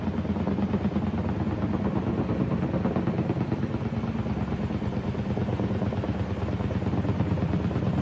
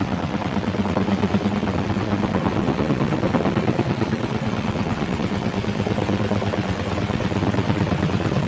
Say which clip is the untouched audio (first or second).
first